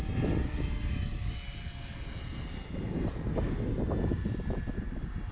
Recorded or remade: recorded